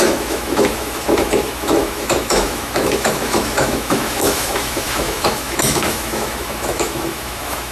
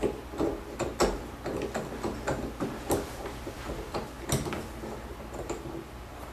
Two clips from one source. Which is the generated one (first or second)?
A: first